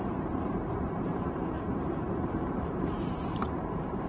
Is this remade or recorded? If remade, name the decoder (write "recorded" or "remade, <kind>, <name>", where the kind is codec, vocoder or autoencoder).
remade, vocoder, BigVGAN v2